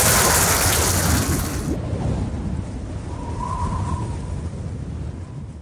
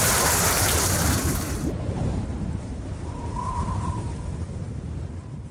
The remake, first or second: second